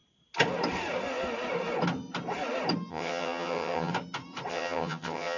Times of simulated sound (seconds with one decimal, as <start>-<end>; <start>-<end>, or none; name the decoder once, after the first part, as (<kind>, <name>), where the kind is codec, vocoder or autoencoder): 2.9-3.9 (vocoder, HiFi-GAN); 4.5-5.4